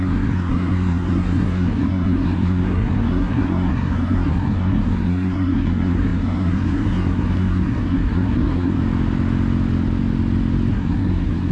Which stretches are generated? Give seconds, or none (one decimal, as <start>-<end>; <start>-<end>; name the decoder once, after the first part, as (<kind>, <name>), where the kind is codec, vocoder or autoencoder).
0.0-8.8 (codec, SNAC); 10.7-11.5